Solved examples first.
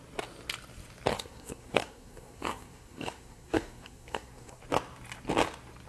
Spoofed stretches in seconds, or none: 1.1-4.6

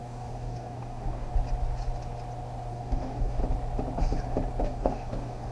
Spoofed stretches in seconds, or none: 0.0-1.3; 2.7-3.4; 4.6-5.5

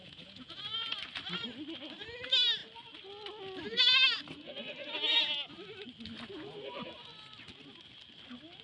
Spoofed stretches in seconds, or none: 0.0-0.6

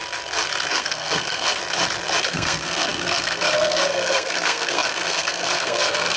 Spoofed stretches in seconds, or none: 0.7-1.6; 2.2-6.2